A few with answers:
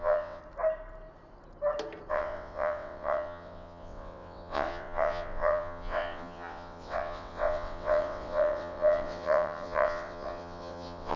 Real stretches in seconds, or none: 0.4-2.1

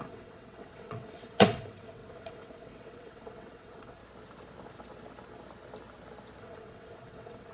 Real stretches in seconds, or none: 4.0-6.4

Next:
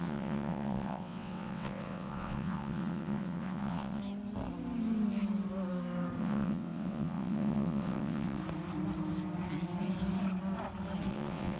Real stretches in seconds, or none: 4.0-6.2; 8.4-11.1

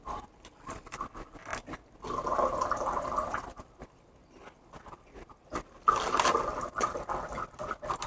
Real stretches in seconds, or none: 0.0-8.1

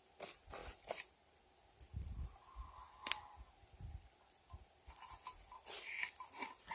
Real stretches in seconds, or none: 0.0-6.7

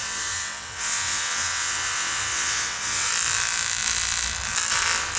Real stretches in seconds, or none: 3.1-5.2

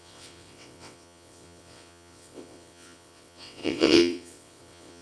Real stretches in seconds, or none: none

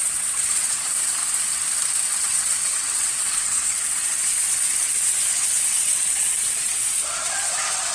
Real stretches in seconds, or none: 1.2-2.2